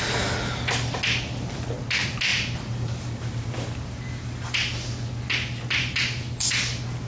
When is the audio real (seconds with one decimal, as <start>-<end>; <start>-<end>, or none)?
0.0-2.3; 4.7-7.1